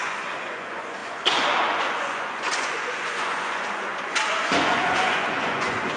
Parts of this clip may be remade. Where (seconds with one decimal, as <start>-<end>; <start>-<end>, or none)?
0.0-6.0